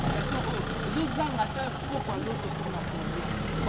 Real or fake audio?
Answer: real